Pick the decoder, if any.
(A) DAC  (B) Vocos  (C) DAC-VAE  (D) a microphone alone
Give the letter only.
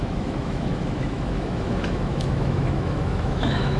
C